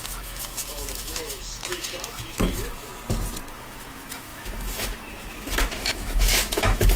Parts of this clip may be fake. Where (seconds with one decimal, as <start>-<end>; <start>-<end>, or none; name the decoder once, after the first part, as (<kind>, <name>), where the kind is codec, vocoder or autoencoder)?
0.0-2.9 (autoencoder, DAC-VAE); 3.5-7.0